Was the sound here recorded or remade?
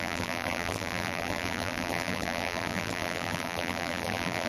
remade